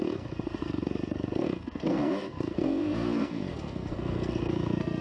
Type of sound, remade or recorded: remade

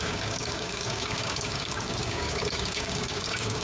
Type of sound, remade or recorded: remade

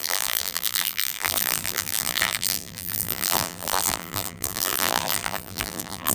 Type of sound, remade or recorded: remade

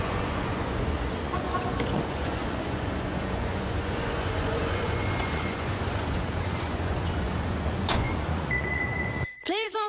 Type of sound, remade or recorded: remade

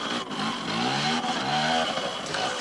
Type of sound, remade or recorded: recorded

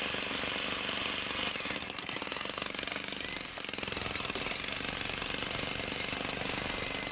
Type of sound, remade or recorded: recorded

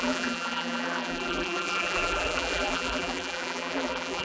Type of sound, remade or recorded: remade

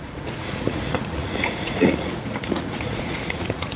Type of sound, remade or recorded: remade